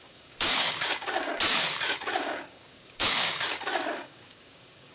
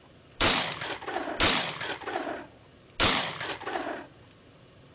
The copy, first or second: first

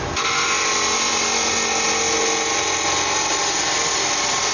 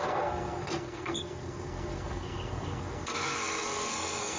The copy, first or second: second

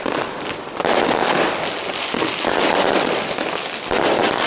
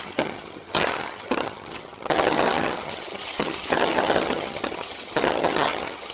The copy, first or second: second